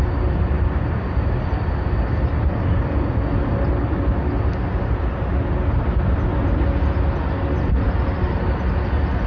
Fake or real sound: real